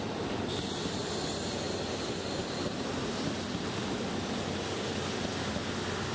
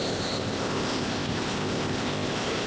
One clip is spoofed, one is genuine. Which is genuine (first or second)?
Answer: first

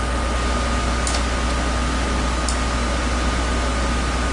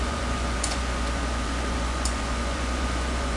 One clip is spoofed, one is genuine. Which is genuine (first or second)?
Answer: first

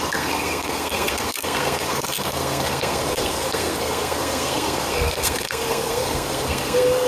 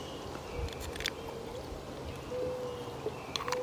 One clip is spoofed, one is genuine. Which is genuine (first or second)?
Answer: second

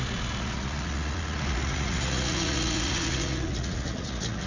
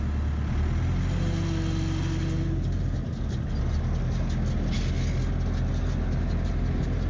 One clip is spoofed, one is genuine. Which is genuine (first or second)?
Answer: second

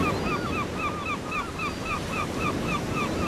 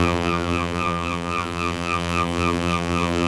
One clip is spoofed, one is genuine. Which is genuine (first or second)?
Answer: first